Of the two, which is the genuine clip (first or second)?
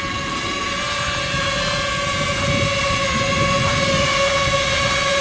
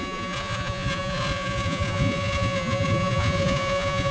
first